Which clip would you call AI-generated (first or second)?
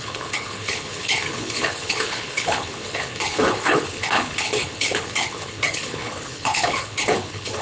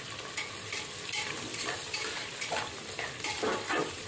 first